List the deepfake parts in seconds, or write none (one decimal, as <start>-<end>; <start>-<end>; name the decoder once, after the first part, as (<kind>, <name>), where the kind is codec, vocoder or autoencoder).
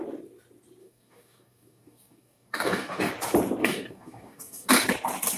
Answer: 0.8-3.1 (codec, DAC); 3.6-4.7